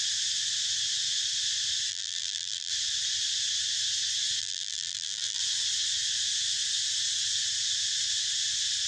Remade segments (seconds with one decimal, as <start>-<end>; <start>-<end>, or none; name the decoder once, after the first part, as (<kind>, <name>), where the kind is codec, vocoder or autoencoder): 1.9-2.7 (vocoder, BigVGAN v2); 4.4-5.4